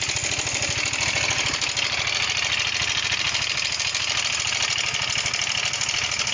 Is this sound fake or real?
real